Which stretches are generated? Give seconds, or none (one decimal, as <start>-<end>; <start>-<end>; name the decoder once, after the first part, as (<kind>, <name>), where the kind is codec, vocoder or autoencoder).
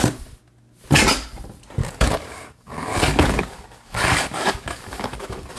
1.8-5.6 (codec, DAC)